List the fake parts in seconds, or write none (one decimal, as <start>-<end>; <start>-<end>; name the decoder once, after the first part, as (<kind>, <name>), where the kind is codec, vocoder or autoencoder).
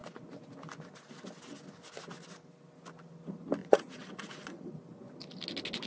3.6-4.7 (vocoder, Vocos)